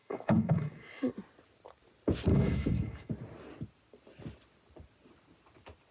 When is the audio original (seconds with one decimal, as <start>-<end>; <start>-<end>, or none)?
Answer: 1.1-2.3; 3.1-5.9